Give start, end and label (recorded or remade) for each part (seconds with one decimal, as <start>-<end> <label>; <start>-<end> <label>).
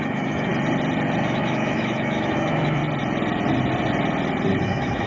0.0-0.5 remade; 0.5-1.2 recorded; 1.2-2.8 remade; 2.8-4.6 recorded; 4.6-5.1 remade